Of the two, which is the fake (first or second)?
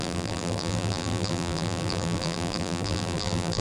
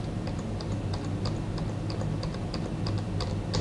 first